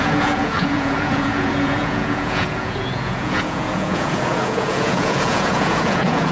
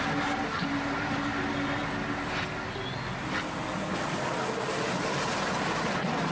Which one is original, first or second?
second